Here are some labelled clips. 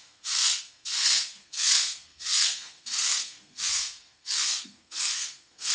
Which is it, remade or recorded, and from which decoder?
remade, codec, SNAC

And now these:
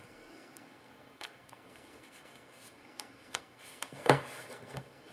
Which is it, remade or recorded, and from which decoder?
remade, codec, SNAC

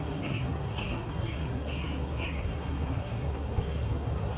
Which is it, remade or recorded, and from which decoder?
remade, codec, SNAC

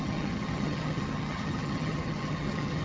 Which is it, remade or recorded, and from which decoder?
remade, vocoder, HiFi-GAN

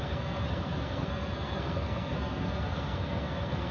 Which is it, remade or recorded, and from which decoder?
remade, codec, SNAC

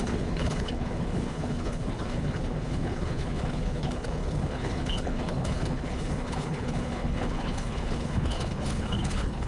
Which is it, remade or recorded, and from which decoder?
remade, codec, HILCodec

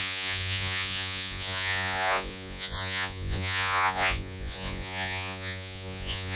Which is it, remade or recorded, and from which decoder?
remade, vocoder, Vocos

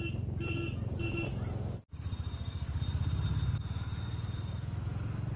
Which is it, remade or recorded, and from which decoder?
recorded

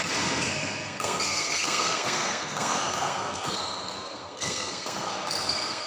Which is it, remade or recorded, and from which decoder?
remade, codec, SNAC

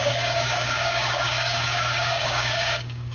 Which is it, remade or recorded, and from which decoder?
remade, codec, DAC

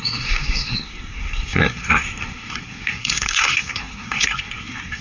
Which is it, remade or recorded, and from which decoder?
remade, codec, SNAC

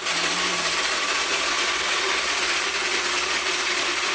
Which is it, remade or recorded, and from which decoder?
recorded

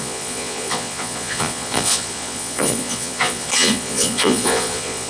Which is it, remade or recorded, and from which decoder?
remade, vocoder, Vocos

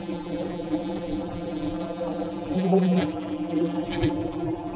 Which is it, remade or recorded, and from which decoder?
remade, vocoder, BigVGAN v2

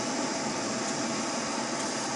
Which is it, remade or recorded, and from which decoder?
recorded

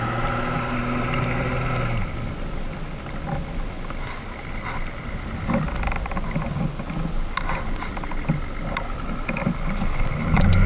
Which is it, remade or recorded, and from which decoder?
recorded